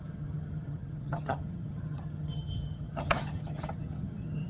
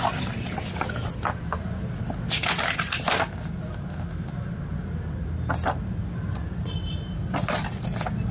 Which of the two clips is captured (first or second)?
second